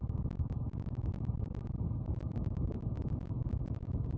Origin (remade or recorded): recorded